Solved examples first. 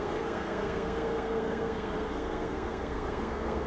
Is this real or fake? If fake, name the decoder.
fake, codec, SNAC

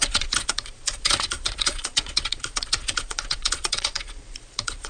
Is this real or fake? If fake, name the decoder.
fake, vocoder, Vocos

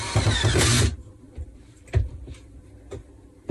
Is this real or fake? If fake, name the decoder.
fake, vocoder, BigVGAN v2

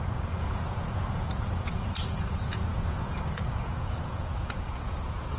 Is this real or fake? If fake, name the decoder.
fake, vocoder, Vocos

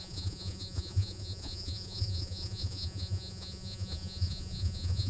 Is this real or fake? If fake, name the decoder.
fake, vocoder, Vocos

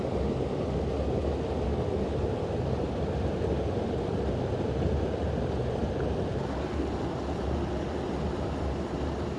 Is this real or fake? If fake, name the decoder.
real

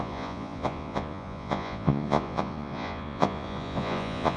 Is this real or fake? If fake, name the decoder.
fake, vocoder, Vocos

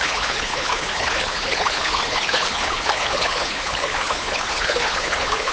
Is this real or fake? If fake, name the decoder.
fake, codec, HILCodec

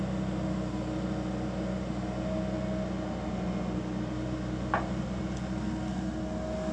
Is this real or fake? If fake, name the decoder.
real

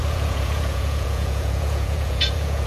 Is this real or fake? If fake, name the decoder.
fake, vocoder, Vocos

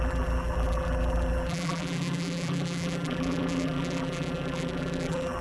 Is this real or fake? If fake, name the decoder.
fake, vocoder, BigVGAN v2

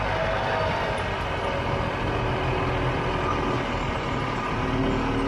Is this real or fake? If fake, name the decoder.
real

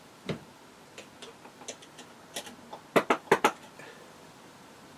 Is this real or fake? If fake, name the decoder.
real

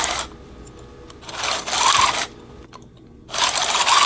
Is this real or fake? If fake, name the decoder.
real